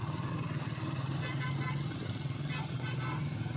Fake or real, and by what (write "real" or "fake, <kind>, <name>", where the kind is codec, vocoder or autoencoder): real